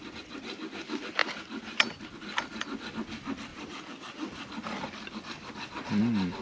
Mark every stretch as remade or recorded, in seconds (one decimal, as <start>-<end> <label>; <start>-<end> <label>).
0.0-6.4 recorded